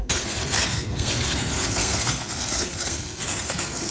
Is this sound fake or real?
fake